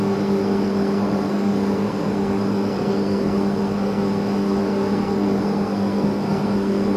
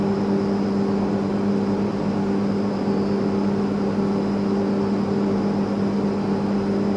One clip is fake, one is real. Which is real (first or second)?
second